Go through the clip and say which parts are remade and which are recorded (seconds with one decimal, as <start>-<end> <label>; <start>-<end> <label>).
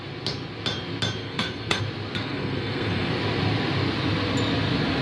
0.0-1.2 recorded; 1.2-1.8 remade; 1.8-2.2 recorded; 2.2-3.1 remade; 3.1-5.0 recorded